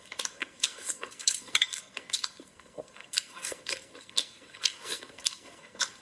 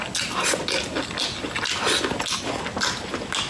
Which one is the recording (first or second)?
second